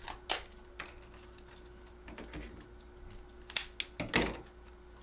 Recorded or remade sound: recorded